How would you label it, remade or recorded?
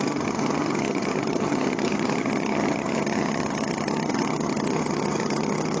remade